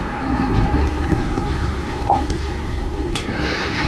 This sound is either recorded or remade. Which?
remade